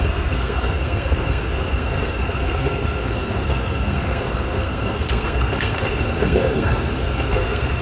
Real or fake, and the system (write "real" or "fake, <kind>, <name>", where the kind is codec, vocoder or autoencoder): fake, codec, SNAC